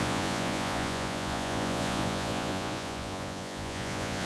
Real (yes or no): no